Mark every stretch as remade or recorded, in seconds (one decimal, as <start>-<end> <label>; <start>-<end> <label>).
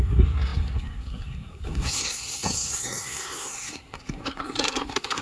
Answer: 0.0-5.2 remade